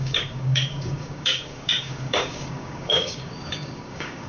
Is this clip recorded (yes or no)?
no